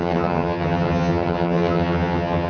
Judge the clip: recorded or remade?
remade